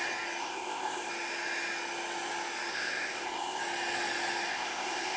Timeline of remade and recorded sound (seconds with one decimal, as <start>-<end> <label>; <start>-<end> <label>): 0.0-0.4 recorded; 0.4-1.1 remade; 1.1-2.7 recorded; 2.7-3.6 remade; 3.6-4.5 recorded; 4.5-5.2 remade